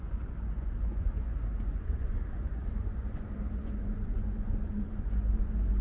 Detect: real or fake fake